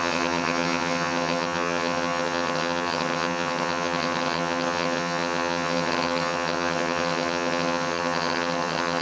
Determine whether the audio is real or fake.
fake